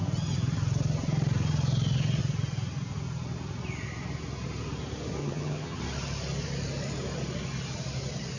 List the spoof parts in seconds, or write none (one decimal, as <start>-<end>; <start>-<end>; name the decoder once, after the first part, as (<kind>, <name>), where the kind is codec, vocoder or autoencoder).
5.2-5.8 (vocoder, HiFi-GAN)